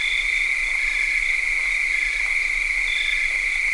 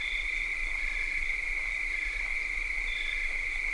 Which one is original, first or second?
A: first